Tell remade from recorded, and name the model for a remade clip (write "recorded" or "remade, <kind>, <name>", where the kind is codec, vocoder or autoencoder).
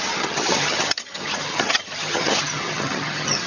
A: remade, vocoder, HiFi-GAN